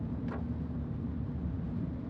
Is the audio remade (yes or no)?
no